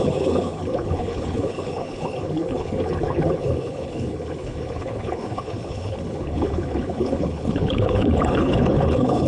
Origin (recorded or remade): remade